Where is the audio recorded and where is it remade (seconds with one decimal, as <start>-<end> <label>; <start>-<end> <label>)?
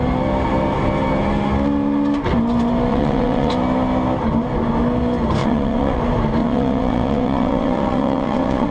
0.0-2.9 recorded; 2.9-3.5 remade; 3.5-5.4 recorded; 5.4-6.0 remade; 6.0-6.4 recorded; 6.4-8.7 remade